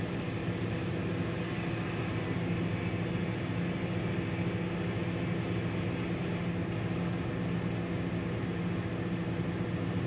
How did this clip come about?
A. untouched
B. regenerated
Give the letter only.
A